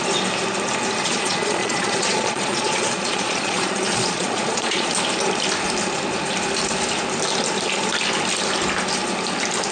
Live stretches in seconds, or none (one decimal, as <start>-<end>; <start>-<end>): 0.0-1.0; 4.9-9.7